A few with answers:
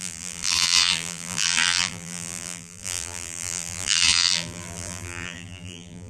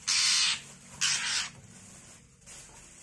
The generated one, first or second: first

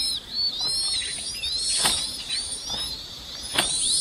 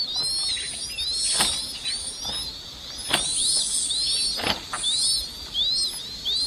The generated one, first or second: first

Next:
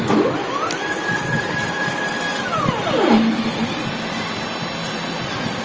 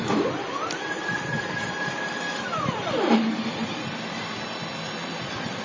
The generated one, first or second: second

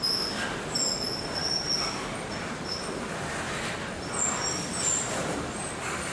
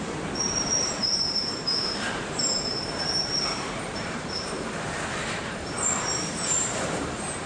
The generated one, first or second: second